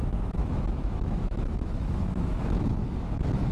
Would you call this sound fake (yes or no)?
yes